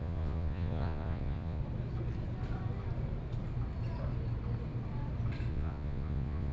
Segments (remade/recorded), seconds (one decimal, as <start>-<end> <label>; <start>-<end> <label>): 0.0-1.6 remade; 1.6-5.5 recorded; 5.5-6.5 remade